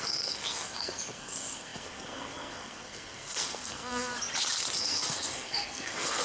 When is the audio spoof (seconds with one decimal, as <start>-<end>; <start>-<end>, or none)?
0.0-4.1; 4.8-6.2